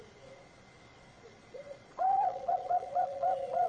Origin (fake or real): fake